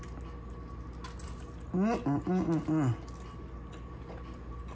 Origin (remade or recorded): recorded